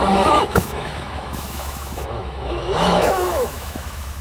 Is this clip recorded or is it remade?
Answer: remade